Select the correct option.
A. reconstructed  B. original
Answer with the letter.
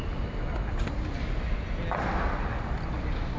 B